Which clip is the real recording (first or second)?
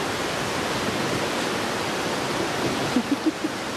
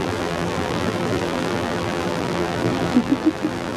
first